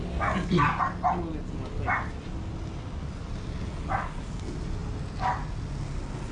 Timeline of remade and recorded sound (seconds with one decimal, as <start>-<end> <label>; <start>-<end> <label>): 0.0-6.3 recorded